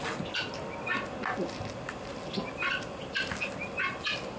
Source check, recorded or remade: recorded